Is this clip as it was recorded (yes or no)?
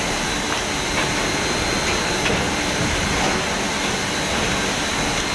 yes